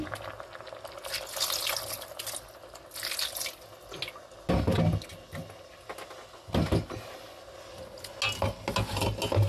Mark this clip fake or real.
real